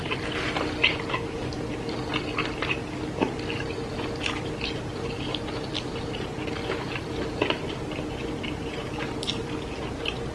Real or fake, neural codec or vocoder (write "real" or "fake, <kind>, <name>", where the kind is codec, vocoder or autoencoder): real